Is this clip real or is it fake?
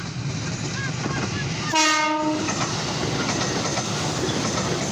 real